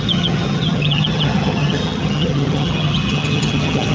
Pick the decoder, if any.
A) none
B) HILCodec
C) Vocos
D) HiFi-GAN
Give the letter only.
D